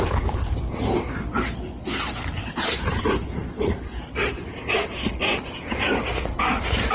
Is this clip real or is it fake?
real